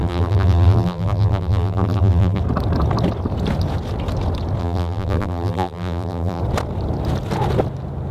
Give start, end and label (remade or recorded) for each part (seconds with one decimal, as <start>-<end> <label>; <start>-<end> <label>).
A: 0.0-2.4 remade; 2.4-4.6 recorded; 4.6-6.4 remade; 6.4-8.1 recorded